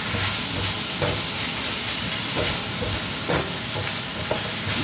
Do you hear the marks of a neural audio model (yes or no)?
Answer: no